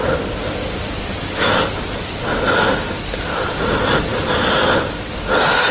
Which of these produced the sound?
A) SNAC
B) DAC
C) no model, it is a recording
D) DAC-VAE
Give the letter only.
C